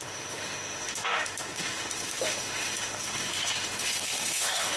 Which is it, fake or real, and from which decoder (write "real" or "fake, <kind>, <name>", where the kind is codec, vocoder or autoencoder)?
fake, autoencoder, DAC-VAE